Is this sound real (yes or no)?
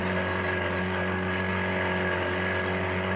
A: yes